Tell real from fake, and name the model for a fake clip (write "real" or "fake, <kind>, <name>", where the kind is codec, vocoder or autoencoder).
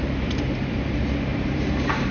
fake, vocoder, BigVGAN v2